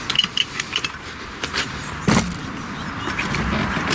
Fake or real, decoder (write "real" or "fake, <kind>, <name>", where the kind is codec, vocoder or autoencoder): fake, vocoder, BigVGAN v2